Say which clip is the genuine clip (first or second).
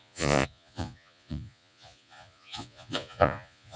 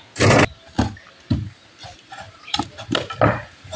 second